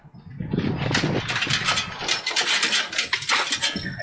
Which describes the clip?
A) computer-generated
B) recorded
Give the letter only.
B